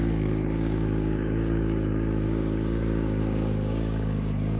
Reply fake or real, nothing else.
fake